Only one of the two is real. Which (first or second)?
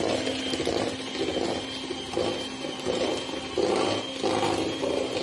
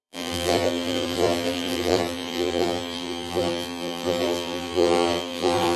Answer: first